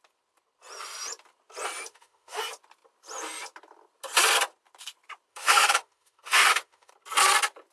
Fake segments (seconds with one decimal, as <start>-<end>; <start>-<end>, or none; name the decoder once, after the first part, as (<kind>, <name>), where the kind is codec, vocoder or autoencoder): 1.9-2.4 (autoencoder, DAC-VAE); 5.3-6.9